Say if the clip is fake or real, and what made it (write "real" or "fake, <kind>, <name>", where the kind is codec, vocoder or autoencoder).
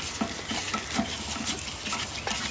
real